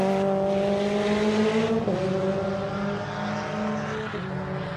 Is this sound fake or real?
real